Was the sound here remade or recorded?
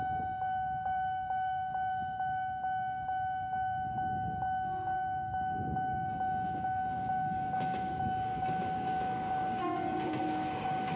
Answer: remade